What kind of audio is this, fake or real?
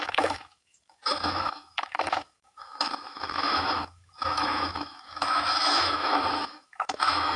fake